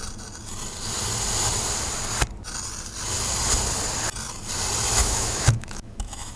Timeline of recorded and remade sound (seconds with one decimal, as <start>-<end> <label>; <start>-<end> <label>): 0.0-5.0 recorded; 5.0-6.4 remade